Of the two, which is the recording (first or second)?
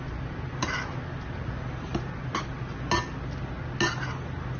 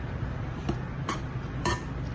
first